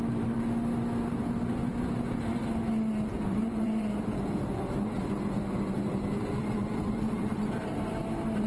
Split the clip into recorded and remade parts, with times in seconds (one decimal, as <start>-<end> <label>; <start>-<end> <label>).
0.0-3.3 recorded; 3.3-8.0 remade; 8.0-8.5 recorded